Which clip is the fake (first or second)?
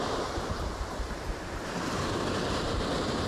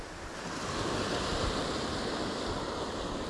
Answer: first